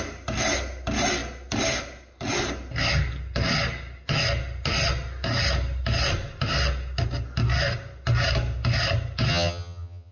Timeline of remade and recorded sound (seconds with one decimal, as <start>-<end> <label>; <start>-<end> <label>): 0.0-9.3 recorded; 9.3-10.1 remade